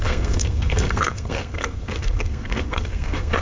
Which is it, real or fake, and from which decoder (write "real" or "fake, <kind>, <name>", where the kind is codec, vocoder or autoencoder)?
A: fake, codec, SNAC